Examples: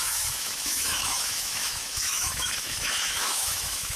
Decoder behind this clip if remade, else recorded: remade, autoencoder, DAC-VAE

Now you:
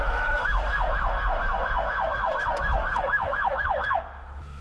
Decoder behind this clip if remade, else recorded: remade, autoencoder, DAC-VAE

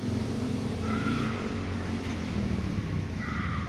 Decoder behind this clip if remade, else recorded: remade, autoencoder, DAC-VAE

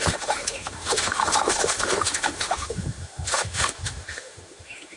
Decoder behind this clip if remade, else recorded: remade, autoencoder, DAC-VAE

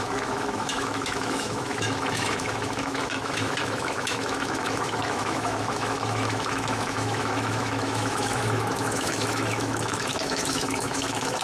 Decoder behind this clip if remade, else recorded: remade, autoencoder, DAC-VAE